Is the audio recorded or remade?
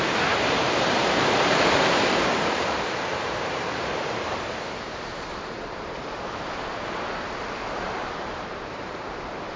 remade